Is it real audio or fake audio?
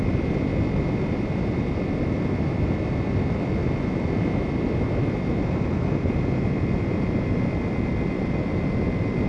real